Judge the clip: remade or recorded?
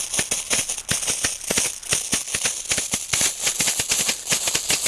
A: recorded